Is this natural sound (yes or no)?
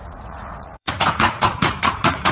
no